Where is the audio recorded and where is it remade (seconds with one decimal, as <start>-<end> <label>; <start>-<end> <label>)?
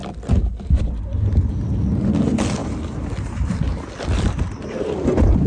0.0-5.5 recorded